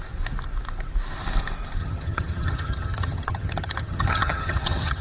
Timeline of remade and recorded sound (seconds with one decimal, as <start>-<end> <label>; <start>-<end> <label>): 0.0-1.8 recorded; 1.8-5.0 remade